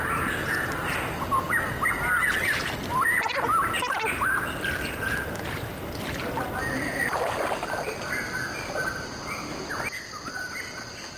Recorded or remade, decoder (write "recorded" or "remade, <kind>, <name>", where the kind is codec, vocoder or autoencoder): recorded